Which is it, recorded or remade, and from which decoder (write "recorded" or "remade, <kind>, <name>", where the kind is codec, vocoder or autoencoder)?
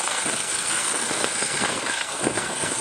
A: remade, codec, SNAC